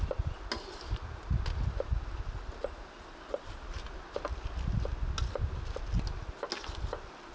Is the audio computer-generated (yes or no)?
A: no